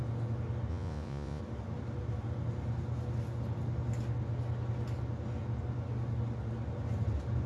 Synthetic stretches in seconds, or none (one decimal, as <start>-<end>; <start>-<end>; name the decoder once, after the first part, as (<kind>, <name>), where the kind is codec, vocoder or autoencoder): 0.7-1.4 (vocoder, Vocos)